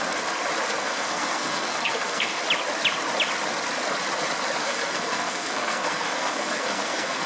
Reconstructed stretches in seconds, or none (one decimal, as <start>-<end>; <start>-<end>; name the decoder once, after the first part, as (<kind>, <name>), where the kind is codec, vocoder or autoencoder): 0.8-2.4 (codec, SNAC); 4.6-7.3